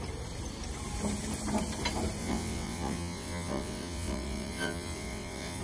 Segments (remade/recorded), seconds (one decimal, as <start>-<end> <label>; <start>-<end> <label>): 0.0-2.2 recorded; 2.2-5.6 remade